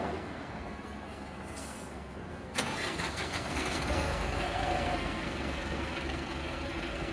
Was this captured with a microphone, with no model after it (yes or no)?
no